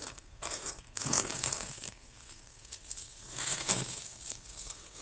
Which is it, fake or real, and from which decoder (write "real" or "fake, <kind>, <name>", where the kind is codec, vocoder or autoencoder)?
fake, codec, SNAC